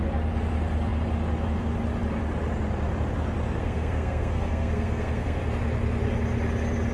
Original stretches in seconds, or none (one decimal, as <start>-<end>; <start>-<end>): 0.0-3.6; 5.4-6.9